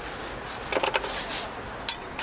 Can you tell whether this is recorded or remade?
recorded